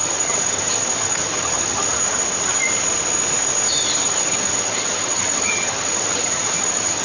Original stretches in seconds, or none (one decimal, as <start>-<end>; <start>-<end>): 2.0-4.0